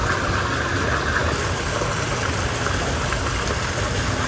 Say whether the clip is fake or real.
real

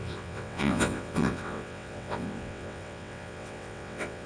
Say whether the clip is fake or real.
fake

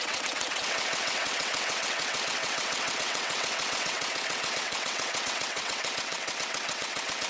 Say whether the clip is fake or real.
fake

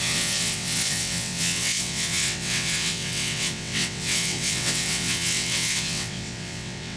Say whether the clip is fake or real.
fake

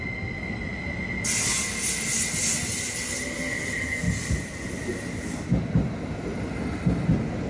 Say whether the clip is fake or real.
real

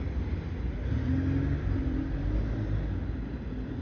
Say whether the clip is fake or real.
real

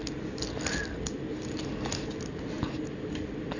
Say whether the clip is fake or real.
real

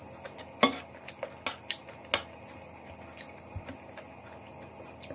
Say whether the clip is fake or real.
real